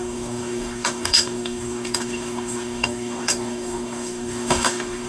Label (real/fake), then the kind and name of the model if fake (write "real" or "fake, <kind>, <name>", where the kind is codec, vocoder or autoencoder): fake, codec, DAC